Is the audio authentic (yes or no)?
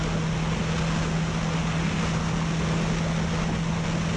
yes